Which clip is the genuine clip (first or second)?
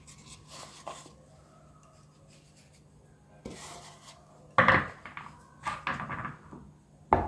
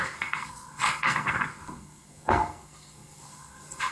first